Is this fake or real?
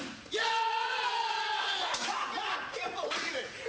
fake